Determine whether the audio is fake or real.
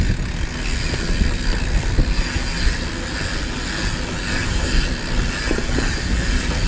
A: real